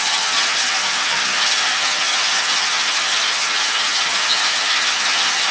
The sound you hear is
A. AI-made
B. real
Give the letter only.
A